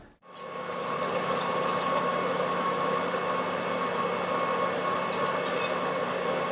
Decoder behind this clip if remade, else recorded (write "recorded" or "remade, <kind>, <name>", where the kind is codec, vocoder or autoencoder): recorded